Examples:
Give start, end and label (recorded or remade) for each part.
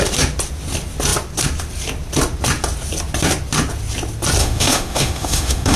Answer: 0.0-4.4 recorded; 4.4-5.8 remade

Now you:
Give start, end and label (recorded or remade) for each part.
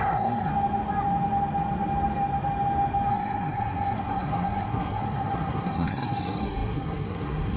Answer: 0.0-0.5 remade; 0.5-3.1 recorded; 3.1-7.6 remade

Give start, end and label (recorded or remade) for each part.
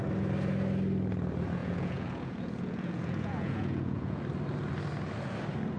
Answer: 0.0-1.6 recorded; 1.6-4.2 remade; 4.2-5.8 recorded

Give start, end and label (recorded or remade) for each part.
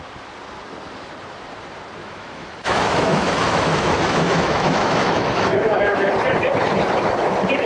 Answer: 0.0-2.0 recorded; 2.0-6.1 remade; 6.1-7.7 recorded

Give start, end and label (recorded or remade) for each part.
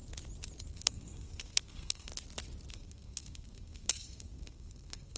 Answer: 0.0-0.7 recorded; 0.7-2.1 remade; 2.1-2.7 recorded; 2.7-5.2 remade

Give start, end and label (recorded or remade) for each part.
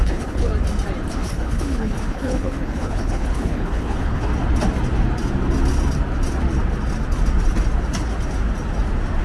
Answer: 0.0-0.5 remade; 0.5-1.1 recorded; 1.1-4.3 remade; 4.3-9.2 recorded